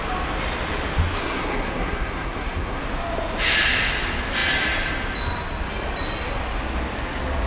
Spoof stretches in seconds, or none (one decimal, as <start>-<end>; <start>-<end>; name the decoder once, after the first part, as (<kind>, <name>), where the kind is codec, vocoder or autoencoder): 1.2-2.8 (codec, SNAC)